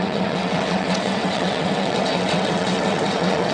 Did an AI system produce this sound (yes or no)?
yes